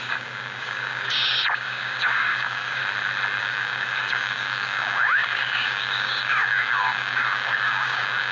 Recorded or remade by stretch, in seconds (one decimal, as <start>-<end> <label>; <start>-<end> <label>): 0.0-2.8 remade; 2.8-3.4 recorded; 3.4-8.3 remade